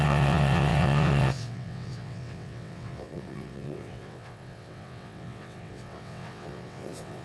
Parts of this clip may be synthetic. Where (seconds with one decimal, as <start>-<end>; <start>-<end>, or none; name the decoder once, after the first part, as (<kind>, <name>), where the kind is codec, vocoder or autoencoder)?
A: 0.0-7.2 (vocoder, WaveNeXt)